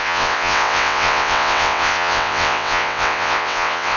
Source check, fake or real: fake